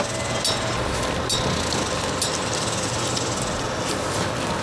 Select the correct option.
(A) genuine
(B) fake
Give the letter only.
A